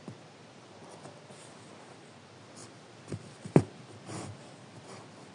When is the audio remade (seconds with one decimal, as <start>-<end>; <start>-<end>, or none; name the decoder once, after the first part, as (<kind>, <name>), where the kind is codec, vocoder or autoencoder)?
none